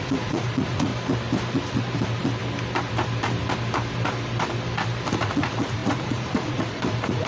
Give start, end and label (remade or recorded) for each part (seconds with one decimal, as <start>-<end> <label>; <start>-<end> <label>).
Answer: 0.0-0.9 remade; 0.9-5.1 recorded; 5.1-7.3 remade